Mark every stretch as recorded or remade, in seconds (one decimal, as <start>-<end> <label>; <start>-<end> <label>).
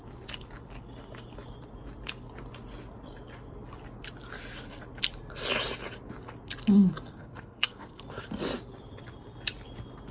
0.0-7.1 recorded; 7.1-8.0 remade; 8.0-10.1 recorded